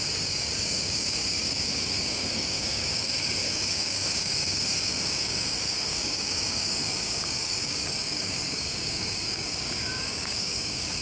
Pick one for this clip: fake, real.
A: fake